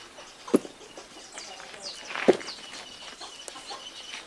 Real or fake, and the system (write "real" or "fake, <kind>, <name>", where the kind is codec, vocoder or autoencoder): real